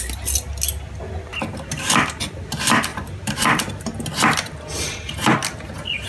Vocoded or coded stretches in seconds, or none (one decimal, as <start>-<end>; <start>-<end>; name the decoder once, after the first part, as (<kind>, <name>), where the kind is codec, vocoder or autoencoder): 2.9-3.8 (vocoder, BigVGAN v2)